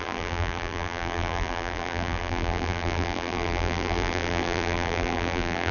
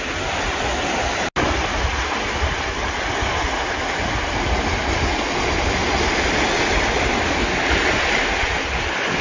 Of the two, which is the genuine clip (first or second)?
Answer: second